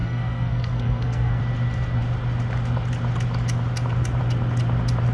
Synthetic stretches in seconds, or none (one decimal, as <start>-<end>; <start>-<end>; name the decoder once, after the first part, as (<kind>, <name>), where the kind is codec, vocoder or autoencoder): 0.0-1.4 (codec, SNAC)